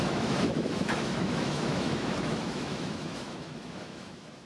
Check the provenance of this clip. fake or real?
fake